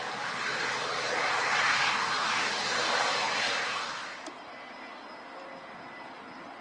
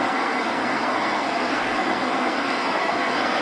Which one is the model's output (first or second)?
second